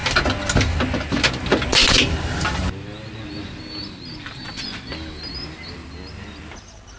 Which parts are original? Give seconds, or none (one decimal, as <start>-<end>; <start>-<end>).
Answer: 0.0-1.8; 5.9-7.0